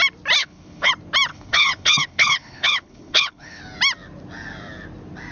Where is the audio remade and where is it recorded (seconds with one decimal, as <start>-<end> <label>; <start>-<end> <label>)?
0.0-0.4 recorded; 0.4-0.9 remade; 0.9-1.3 recorded; 1.3-3.6 remade; 3.6-5.3 recorded